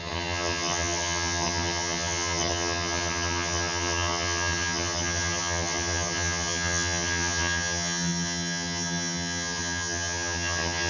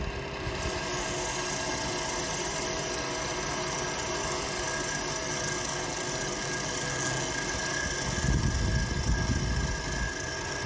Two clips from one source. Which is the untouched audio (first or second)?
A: second